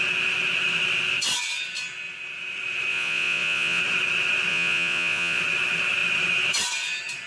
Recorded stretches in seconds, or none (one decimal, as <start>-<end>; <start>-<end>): 0.0-2.9; 3.8-4.5; 5.4-7.3

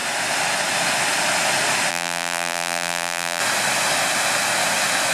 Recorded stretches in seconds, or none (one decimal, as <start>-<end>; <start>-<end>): 0.0-1.9; 3.4-5.1

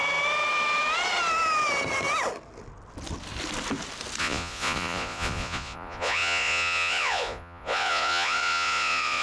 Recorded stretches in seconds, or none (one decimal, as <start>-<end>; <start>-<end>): 0.0-4.2

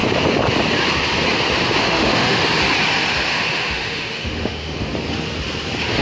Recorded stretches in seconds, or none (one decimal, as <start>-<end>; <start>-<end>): 0.0-1.8; 2.4-3.3; 4.9-6.0